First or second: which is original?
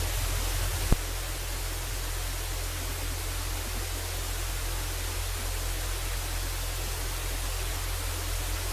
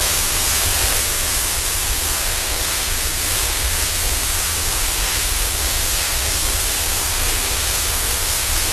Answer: first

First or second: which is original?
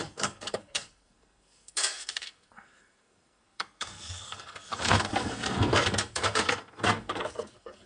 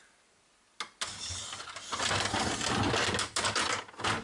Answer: second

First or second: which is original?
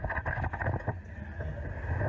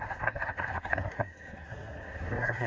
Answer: first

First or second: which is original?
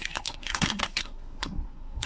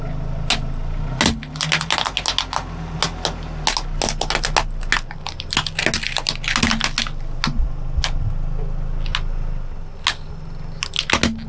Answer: second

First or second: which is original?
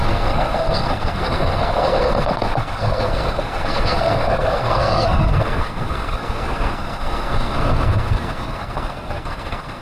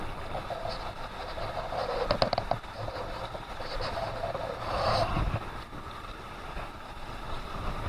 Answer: second